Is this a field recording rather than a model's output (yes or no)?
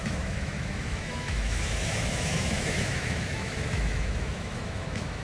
no